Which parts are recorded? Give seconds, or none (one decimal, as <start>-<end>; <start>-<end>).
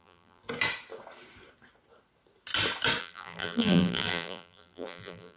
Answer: 0.4-3.0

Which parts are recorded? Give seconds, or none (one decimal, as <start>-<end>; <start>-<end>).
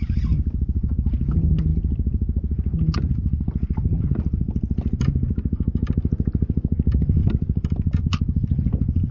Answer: 0.0-7.2; 8.0-9.1